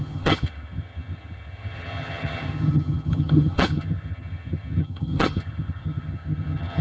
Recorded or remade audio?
remade